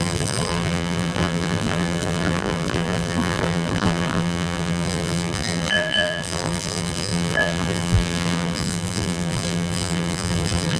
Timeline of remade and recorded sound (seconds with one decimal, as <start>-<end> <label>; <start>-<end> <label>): 0.0-10.8 remade